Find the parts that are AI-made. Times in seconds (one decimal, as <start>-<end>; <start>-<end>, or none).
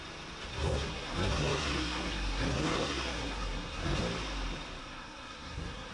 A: 0.5-4.0; 4.8-5.9